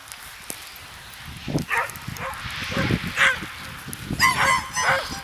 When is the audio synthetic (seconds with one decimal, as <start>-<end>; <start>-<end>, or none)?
1.4-2.4